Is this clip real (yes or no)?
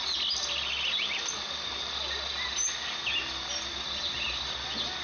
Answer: yes